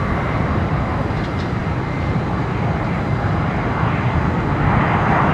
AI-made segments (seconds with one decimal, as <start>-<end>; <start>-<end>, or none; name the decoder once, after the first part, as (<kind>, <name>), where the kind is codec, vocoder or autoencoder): none